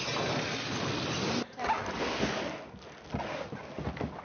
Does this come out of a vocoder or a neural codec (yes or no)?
no